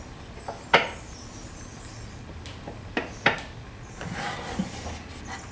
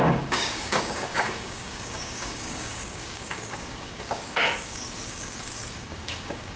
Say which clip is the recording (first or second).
first